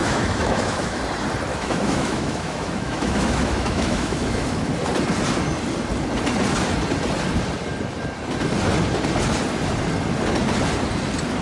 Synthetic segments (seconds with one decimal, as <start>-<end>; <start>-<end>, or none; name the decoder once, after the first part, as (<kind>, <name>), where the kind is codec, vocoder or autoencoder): 0.0-1.0 (autoencoder, DAC-VAE); 1.5-4.7